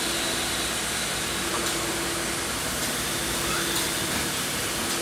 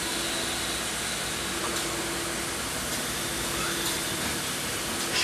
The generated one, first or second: first